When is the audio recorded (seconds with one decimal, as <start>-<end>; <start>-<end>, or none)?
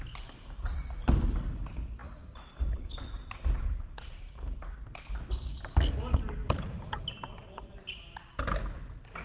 0.0-9.2